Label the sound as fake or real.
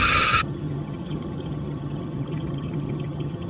fake